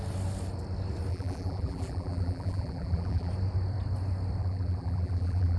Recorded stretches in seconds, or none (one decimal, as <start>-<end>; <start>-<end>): 0.0-1.1; 3.3-4.4

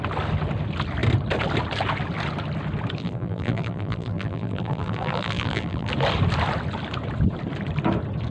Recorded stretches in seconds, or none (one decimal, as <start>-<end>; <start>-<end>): 0.0-3.0; 5.9-8.3

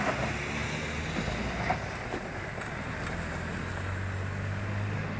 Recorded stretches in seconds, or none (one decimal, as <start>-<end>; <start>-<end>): 0.0-5.2

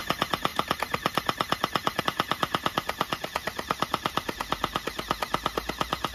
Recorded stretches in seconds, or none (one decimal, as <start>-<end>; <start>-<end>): 0.0-6.1

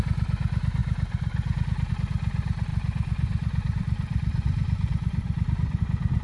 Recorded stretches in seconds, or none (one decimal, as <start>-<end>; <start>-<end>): 0.0-2.7; 5.8-6.2

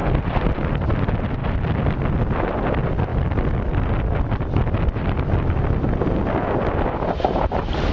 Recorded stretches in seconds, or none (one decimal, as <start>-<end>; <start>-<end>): 0.9-7.9

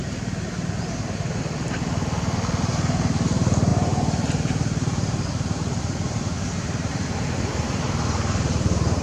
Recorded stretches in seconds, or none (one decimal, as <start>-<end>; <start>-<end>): 0.0-2.6